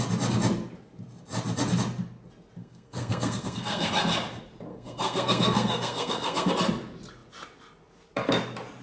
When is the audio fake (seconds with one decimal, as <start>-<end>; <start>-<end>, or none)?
2.6-3.9; 4.7-6.5

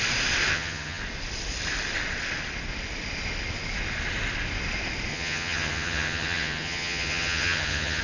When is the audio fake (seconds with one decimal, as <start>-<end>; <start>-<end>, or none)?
0.5-1.0; 5.1-8.0

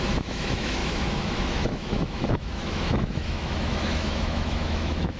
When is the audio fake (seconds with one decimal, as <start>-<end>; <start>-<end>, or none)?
0.0-5.2

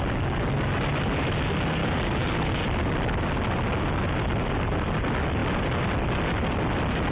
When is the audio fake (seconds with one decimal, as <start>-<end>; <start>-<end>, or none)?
1.8-2.5

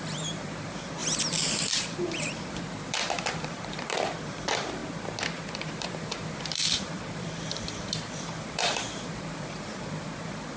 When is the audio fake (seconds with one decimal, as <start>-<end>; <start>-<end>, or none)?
0.0-1.0; 1.7-4.8; 5.5-10.6

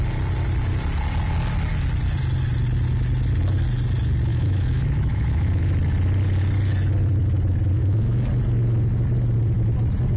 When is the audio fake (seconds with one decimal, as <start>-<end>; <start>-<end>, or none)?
4.3-5.6; 7.8-8.3

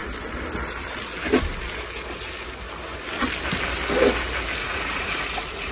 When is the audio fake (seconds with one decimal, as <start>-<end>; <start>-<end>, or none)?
4.6-5.7